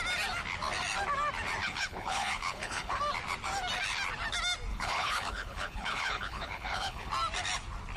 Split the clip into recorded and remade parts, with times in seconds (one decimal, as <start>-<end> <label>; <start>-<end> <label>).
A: 0.0-1.6 recorded; 1.6-3.0 remade; 3.0-4.7 recorded; 4.7-7.1 remade; 7.1-8.0 recorded